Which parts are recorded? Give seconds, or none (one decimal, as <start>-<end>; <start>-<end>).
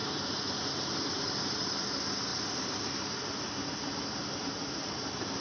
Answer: 0.0-2.3; 2.9-4.2